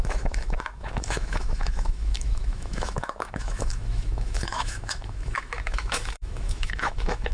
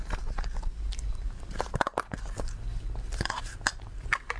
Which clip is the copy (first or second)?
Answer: first